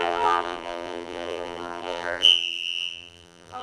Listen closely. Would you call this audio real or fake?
fake